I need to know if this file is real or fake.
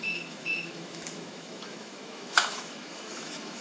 fake